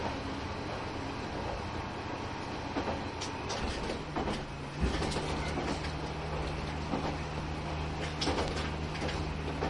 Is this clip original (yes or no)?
yes